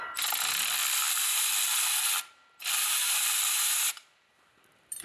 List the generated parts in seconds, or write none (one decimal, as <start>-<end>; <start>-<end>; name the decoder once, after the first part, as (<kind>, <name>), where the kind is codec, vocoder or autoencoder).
0.0-5.0 (vocoder, BigVGAN v2)